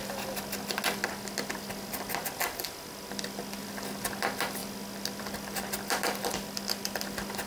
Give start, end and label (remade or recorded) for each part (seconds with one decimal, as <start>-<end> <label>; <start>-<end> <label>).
0.0-7.5 recorded